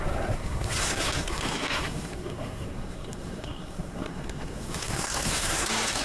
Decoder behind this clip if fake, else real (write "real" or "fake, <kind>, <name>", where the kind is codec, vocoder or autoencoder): fake, codec, SNAC